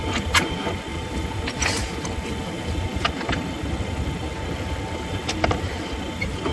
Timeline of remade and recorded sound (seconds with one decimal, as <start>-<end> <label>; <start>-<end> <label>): 0.0-6.5 recorded